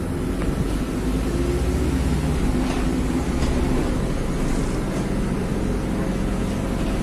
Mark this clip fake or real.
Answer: real